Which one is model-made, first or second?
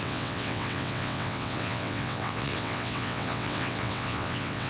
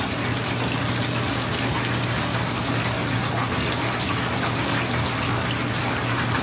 first